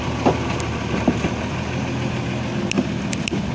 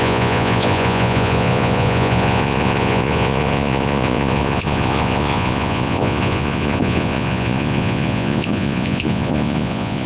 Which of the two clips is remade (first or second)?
second